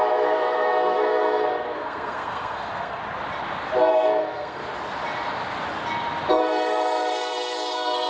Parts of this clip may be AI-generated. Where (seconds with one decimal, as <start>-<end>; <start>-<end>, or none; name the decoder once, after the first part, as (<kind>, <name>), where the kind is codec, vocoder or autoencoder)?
0.0-3.0 (codec, SNAC); 3.9-4.6; 6.3-8.1